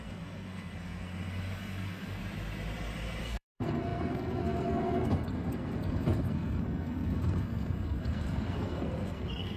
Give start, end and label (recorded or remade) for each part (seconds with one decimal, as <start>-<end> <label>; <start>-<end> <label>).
0.0-2.2 remade; 2.2-3.2 recorded; 3.2-9.6 remade

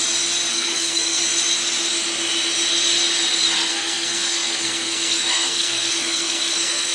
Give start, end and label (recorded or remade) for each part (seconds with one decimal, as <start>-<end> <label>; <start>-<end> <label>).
0.0-0.5 recorded; 0.5-1.2 remade; 1.2-3.7 recorded; 3.7-6.9 remade

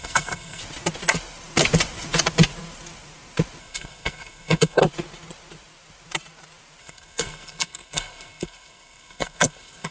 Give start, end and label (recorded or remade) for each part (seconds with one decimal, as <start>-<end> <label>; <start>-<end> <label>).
0.0-0.6 remade; 0.6-3.6 recorded; 3.6-4.8 remade; 4.8-6.8 recorded; 6.8-9.9 remade